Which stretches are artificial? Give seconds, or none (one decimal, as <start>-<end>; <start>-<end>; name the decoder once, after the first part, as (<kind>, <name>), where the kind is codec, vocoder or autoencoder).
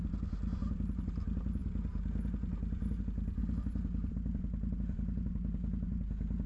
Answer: none